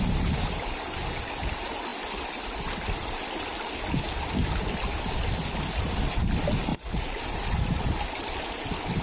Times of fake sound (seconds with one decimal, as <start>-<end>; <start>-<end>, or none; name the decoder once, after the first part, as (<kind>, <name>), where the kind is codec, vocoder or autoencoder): 6.7-7.2 (vocoder, Vocos)